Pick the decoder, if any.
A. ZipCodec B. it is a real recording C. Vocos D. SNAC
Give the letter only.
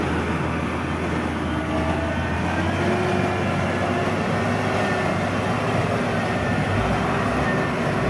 B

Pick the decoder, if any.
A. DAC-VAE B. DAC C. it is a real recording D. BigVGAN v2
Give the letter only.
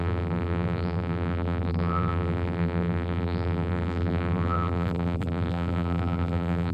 D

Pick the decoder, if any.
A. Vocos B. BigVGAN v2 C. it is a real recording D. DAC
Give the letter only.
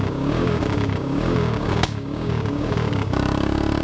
D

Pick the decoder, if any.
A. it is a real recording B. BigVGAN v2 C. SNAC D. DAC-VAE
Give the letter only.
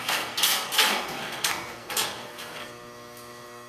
C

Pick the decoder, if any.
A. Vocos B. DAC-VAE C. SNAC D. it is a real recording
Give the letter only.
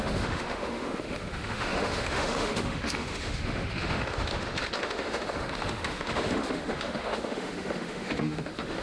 B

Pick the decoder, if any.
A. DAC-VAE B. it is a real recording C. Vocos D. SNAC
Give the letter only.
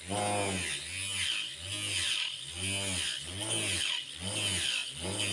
B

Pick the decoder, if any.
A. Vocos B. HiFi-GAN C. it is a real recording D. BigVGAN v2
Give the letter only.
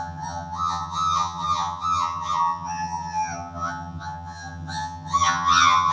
B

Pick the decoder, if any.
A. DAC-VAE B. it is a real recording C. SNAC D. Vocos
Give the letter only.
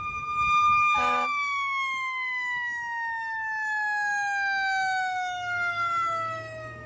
A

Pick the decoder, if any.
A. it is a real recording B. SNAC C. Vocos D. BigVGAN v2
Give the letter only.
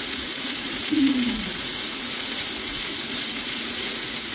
C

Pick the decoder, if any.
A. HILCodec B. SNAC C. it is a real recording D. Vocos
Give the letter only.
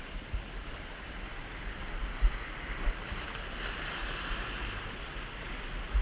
C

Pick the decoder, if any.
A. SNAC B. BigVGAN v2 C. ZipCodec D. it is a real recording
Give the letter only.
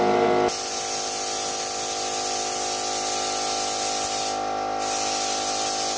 D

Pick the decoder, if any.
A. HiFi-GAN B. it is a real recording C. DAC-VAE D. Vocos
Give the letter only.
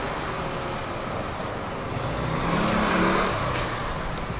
B